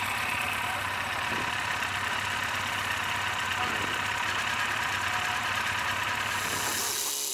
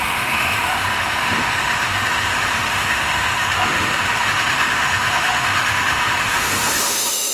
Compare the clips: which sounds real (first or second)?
first